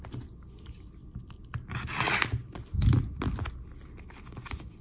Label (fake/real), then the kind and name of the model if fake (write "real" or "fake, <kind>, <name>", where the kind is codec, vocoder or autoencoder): real